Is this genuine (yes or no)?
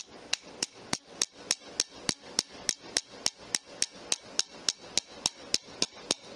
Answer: yes